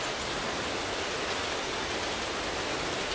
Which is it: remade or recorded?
recorded